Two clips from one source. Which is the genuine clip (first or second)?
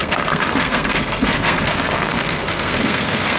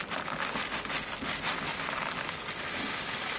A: second